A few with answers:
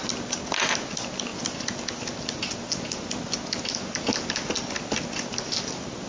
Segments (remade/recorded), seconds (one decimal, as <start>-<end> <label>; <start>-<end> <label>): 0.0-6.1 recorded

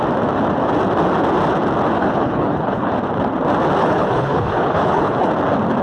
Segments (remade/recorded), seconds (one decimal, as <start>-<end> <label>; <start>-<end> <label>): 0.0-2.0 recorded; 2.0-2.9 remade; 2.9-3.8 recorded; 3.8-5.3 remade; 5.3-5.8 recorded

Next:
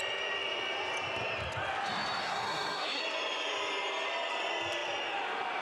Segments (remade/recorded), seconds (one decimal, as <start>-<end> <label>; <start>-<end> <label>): 0.0-2.2 recorded; 2.2-3.0 remade; 3.0-5.6 recorded

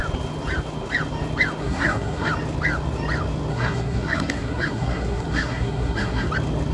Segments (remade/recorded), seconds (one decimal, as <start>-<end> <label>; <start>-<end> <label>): 0.0-1.6 recorded; 1.6-2.3 remade; 2.3-3.5 recorded; 3.5-6.3 remade; 6.3-6.7 recorded

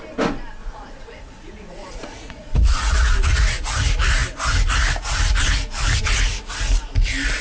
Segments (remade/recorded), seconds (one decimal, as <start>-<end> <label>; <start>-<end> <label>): 0.0-0.6 recorded; 0.6-3.7 remade; 3.7-7.4 recorded